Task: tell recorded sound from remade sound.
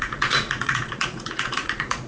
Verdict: remade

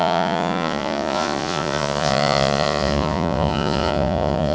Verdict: remade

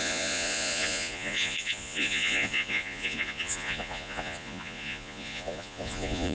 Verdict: remade